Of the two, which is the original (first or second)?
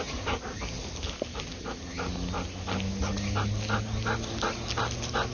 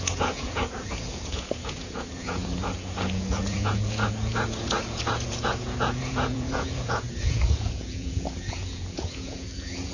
first